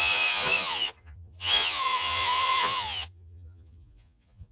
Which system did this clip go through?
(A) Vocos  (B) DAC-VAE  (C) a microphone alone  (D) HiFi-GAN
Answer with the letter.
A